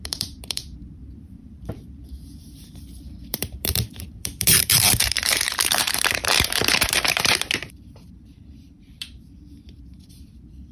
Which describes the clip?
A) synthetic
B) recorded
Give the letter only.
A